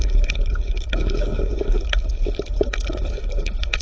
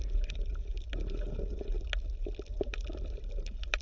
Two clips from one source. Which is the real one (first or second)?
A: second